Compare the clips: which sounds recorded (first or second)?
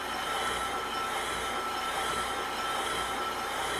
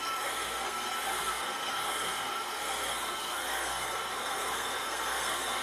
first